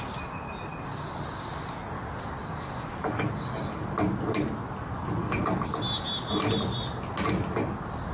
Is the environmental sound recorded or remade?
recorded